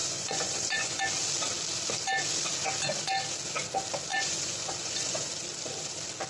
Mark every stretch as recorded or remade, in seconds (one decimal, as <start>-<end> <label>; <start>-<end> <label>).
0.0-1.0 remade; 1.0-4.1 recorded; 4.1-5.3 remade; 5.3-6.3 recorded